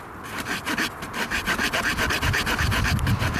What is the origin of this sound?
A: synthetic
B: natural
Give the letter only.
B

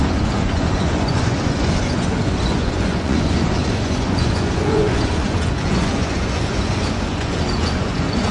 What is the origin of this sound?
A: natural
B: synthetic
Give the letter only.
B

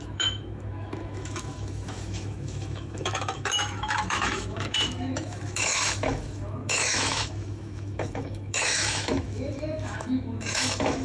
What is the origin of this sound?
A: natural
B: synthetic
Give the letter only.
B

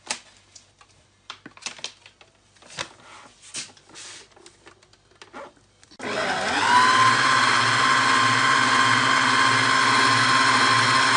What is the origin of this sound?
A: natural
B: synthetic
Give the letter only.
A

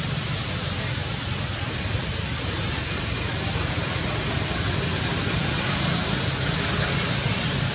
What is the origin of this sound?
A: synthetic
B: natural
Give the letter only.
B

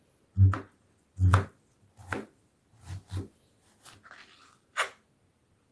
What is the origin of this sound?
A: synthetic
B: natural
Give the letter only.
B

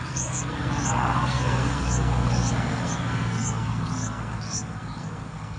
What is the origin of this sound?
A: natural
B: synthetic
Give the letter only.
B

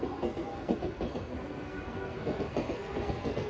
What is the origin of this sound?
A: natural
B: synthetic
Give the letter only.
B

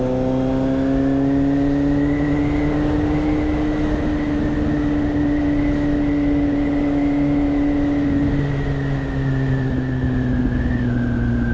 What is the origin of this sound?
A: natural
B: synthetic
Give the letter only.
A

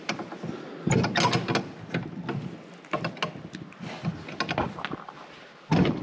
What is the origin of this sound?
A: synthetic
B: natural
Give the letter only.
B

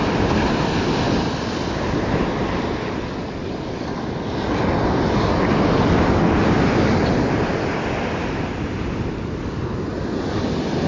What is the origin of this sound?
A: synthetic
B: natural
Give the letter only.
B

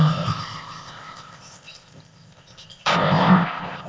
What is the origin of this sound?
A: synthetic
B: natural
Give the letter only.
A